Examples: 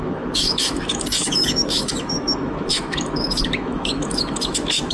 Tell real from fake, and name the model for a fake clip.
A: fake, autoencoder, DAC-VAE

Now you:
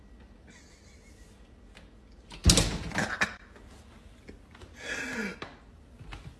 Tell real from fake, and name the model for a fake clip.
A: real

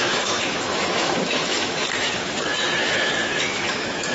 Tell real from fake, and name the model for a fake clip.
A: fake, autoencoder, DAC-VAE